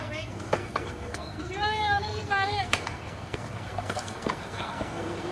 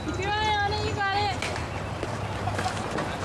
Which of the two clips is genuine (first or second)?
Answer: second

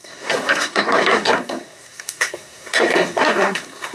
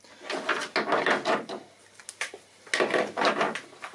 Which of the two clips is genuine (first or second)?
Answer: second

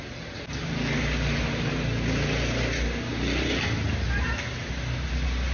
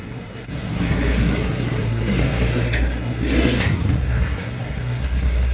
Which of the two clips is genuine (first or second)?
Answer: first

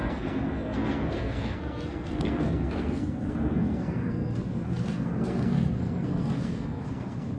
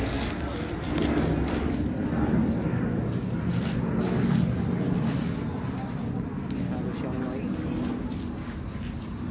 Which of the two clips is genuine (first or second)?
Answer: second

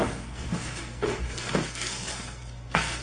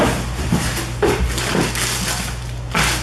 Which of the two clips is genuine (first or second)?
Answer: second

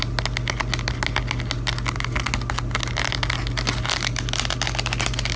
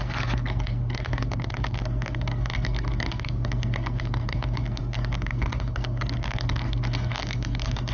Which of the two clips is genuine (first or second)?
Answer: first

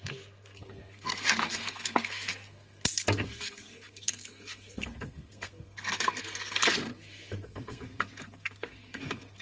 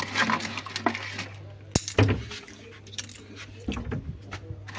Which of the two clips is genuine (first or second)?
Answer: second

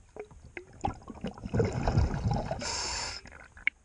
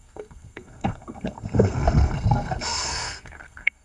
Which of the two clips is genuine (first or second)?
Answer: first